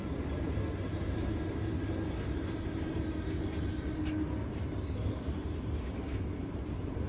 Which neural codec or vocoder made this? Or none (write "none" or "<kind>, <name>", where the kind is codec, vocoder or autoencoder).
none